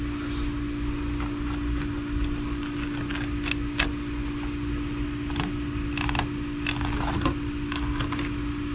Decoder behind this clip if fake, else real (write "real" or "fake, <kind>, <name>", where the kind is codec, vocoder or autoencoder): real